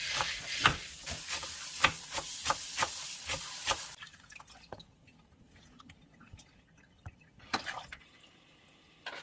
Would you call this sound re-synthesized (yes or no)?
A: no